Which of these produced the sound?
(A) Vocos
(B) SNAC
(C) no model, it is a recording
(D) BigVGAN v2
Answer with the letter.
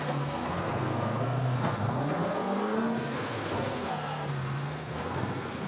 B